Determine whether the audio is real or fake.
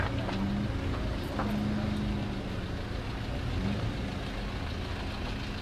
real